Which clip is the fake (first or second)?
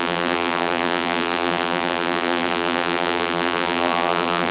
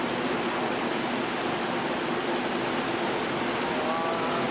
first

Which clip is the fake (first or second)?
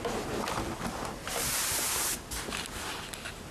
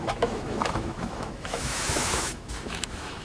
second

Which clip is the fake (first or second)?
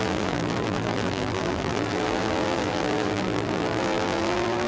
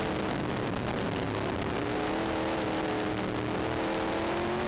first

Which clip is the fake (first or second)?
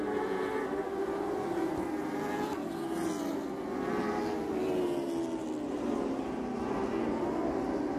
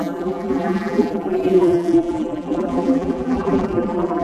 second